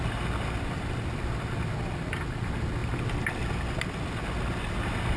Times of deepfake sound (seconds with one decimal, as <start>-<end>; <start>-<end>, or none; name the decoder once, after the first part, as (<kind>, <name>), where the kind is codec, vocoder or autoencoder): none